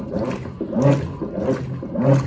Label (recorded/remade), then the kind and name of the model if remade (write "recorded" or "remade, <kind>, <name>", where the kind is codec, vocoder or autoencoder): recorded